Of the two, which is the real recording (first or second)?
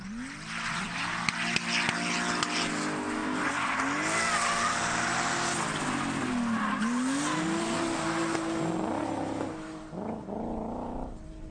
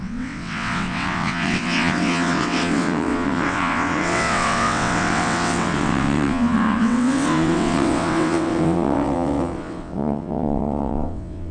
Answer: first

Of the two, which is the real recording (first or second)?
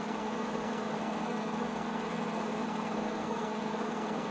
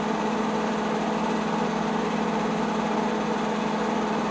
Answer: second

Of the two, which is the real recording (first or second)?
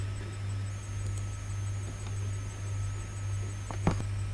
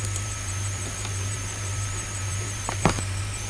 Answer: first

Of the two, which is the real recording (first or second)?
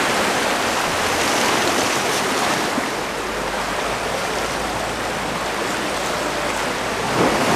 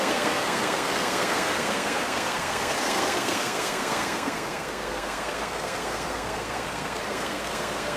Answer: first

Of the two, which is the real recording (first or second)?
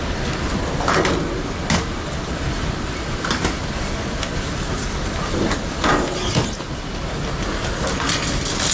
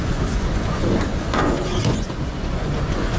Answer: first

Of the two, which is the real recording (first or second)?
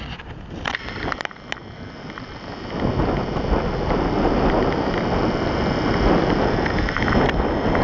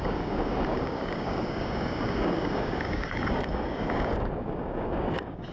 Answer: first